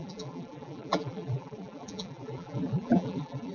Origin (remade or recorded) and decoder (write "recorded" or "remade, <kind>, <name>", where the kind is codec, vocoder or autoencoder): remade, vocoder, BigVGAN v2